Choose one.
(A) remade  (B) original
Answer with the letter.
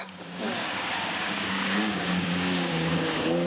A